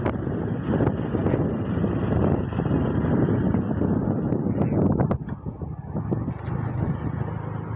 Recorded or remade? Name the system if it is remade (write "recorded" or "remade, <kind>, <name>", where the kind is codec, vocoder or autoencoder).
recorded